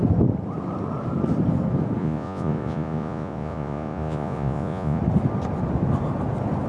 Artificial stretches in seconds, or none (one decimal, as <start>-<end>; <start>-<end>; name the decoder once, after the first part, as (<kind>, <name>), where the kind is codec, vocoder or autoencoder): 2.0-5.0 (vocoder, Vocos)